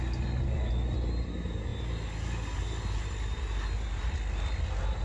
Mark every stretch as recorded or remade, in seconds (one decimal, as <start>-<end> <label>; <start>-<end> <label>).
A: 0.0-5.0 recorded

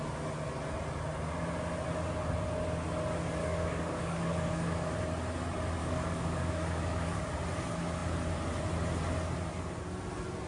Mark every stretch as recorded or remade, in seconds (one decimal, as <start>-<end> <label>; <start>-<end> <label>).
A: 0.0-3.4 recorded; 3.4-4.9 remade; 4.9-5.8 recorded; 5.8-7.2 remade; 7.2-10.5 recorded

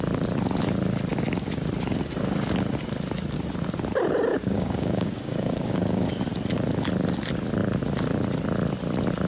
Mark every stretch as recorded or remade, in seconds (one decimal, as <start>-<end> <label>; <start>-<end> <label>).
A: 0.0-4.3 recorded; 4.3-6.1 remade; 6.1-9.3 recorded

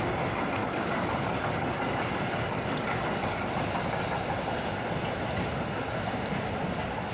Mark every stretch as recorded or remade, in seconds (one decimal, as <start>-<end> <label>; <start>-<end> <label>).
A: 0.0-0.6 recorded; 0.6-3.5 remade; 3.5-7.1 recorded

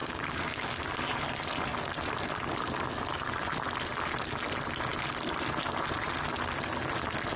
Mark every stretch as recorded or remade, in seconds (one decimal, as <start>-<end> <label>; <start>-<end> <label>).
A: 0.0-0.8 remade; 0.8-7.4 recorded

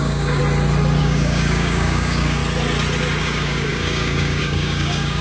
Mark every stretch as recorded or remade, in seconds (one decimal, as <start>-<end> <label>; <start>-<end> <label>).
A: 0.0-0.4 remade; 0.4-1.0 recorded; 1.0-2.4 remade; 2.4-3.2 recorded; 3.2-5.2 remade